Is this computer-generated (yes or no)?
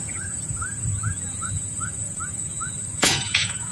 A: yes